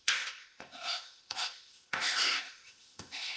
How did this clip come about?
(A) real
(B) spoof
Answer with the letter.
B